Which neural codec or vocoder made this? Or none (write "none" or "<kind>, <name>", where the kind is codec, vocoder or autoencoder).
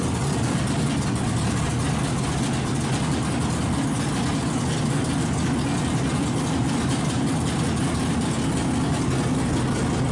none